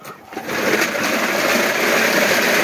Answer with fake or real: fake